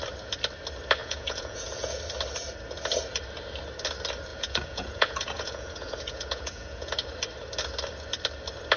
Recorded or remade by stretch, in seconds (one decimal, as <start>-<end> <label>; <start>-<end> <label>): 0.0-1.0 recorded; 1.0-2.0 remade; 2.0-4.3 recorded; 4.3-6.9 remade; 6.9-8.8 recorded